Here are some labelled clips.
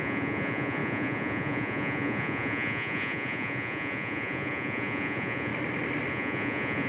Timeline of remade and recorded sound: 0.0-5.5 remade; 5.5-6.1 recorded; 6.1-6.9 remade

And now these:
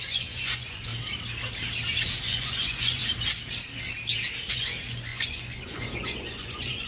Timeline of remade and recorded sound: 0.0-0.9 remade; 0.9-2.2 recorded; 2.2-3.0 remade; 3.0-4.5 recorded; 4.5-6.9 remade

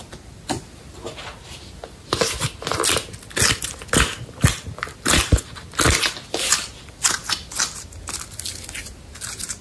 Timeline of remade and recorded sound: 0.0-9.6 recorded

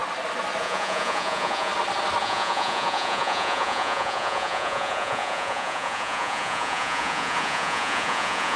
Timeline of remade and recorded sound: 0.0-0.6 recorded; 0.6-1.7 remade; 1.7-2.2 recorded; 2.2-8.6 remade

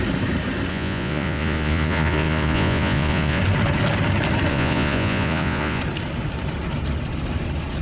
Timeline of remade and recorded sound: 0.0-0.7 recorded; 0.7-3.4 remade; 3.4-4.5 recorded; 4.5-5.8 remade; 5.8-7.8 recorded

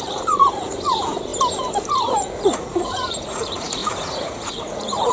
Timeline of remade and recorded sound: 0.0-1.3 remade; 1.3-1.9 recorded; 1.9-5.1 remade

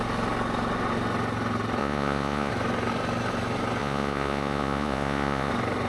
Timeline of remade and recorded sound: 0.0-1.8 recorded; 1.8-2.5 remade; 2.5-3.8 recorded; 3.8-5.5 remade; 5.5-5.9 recorded